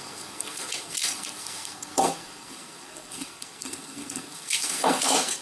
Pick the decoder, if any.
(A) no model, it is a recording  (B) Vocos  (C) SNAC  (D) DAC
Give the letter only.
C